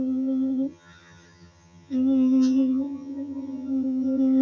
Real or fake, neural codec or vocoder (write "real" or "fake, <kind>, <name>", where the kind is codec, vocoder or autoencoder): fake, vocoder, HiFi-GAN